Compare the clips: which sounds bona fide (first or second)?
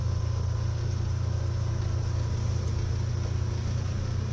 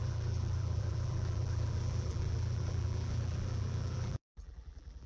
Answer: first